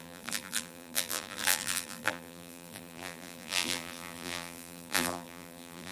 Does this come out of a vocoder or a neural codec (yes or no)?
yes